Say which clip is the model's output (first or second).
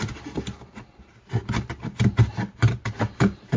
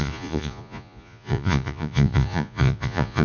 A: second